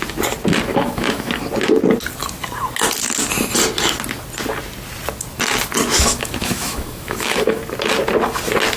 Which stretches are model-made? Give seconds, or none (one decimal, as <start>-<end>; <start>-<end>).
0.7-1.4; 5.9-7.6